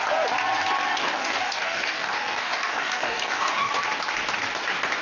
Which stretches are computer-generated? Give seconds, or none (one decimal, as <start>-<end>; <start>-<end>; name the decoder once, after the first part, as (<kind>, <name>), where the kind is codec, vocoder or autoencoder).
0.9-3.7 (codec, DAC)